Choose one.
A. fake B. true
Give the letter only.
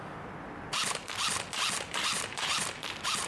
B